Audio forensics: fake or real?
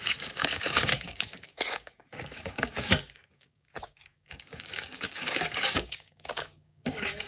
fake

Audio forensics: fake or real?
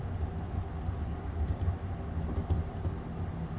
real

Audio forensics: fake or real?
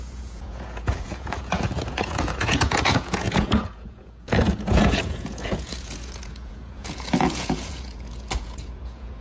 fake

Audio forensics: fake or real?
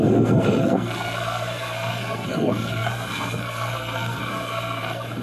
fake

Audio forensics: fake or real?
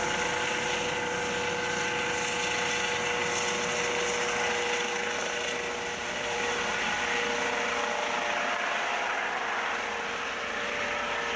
real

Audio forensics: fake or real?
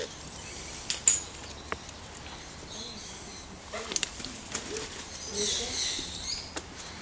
real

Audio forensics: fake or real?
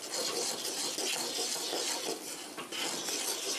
real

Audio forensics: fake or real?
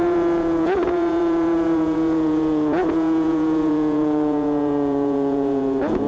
fake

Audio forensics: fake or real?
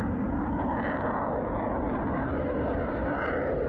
real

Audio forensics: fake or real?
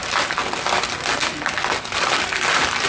real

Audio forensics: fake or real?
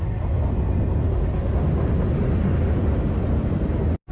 real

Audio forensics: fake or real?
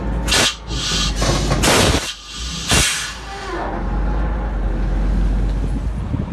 real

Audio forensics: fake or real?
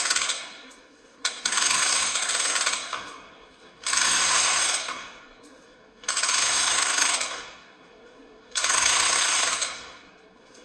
fake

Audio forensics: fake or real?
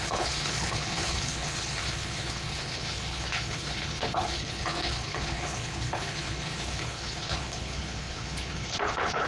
fake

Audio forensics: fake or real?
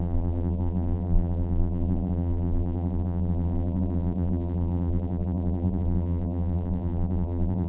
fake